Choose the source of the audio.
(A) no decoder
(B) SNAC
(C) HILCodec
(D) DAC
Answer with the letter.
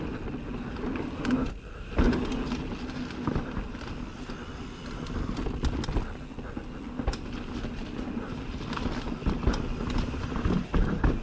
A